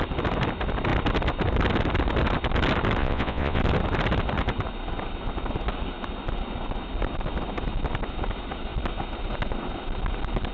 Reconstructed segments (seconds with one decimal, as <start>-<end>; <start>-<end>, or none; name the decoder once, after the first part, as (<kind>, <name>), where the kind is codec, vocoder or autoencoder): 3.0-3.6 (vocoder, Vocos)